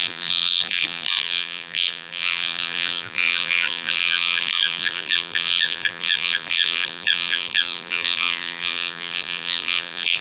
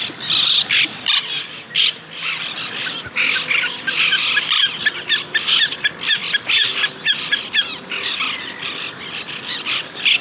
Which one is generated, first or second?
first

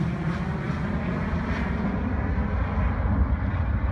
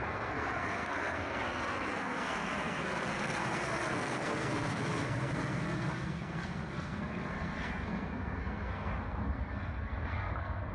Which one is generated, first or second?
second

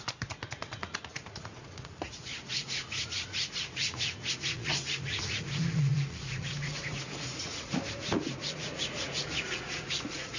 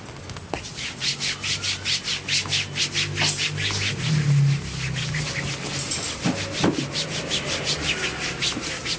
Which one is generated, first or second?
first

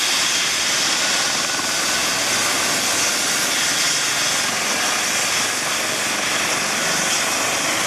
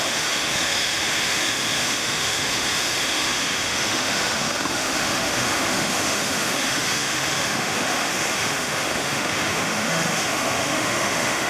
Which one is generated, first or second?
second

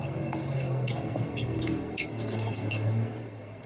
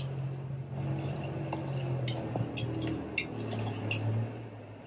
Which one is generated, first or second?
first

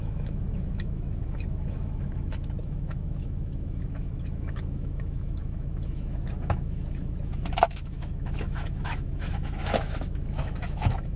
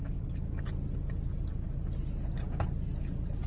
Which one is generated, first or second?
first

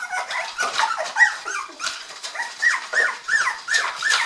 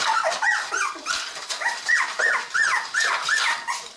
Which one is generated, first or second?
first